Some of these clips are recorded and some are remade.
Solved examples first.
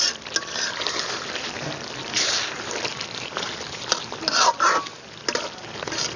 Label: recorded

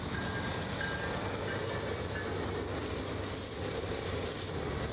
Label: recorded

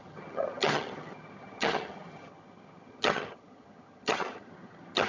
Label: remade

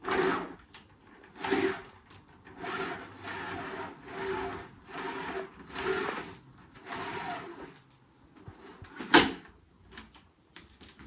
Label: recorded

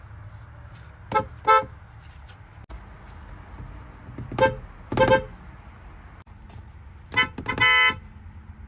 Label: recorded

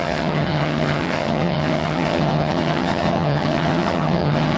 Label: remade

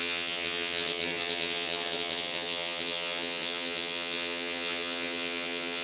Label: remade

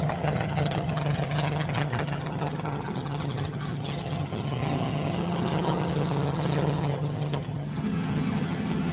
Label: remade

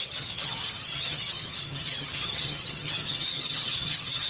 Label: remade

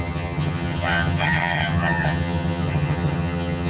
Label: remade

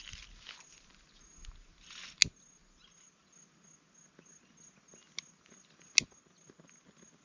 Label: recorded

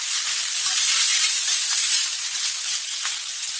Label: recorded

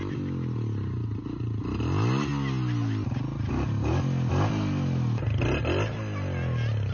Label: recorded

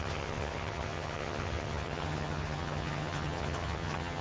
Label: remade